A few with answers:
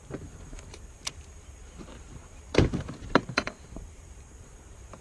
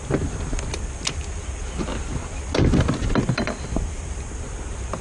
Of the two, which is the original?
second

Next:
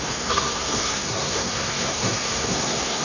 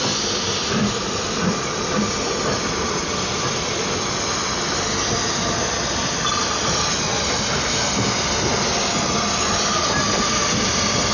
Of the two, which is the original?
second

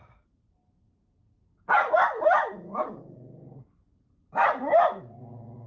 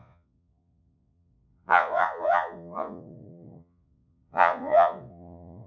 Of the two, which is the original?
first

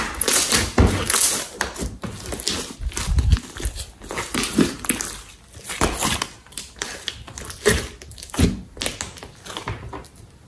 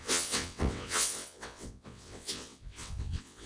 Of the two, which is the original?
first